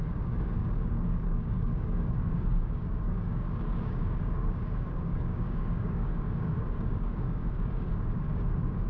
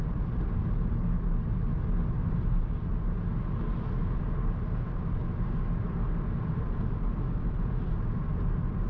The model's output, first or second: first